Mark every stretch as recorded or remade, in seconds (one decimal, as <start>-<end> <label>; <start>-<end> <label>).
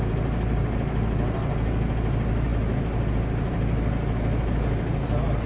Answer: 0.0-5.5 recorded